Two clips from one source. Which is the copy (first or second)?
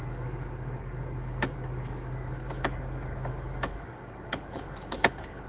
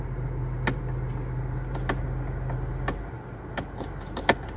first